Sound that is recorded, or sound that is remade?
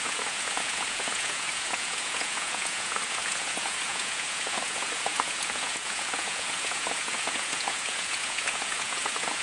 remade